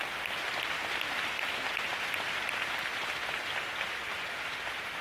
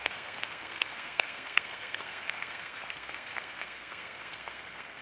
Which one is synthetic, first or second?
second